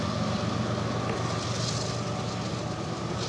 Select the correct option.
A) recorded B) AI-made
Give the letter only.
A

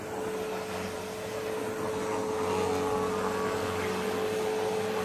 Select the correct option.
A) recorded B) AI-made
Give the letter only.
A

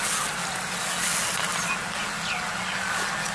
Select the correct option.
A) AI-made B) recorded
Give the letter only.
B